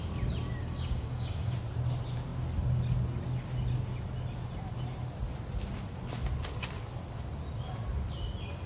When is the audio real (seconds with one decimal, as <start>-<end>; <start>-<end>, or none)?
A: 0.0-0.6; 1.6-8.7